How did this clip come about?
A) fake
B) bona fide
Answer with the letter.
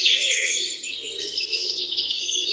A